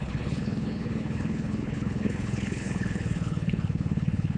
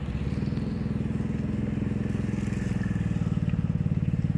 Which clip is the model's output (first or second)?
first